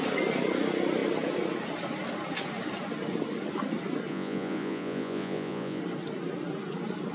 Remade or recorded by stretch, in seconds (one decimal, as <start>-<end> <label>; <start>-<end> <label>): 0.0-4.1 recorded; 4.1-5.8 remade; 5.8-7.1 recorded